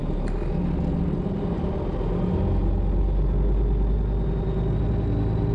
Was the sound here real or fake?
real